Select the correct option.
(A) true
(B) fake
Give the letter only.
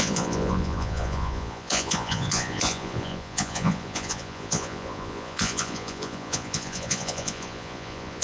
B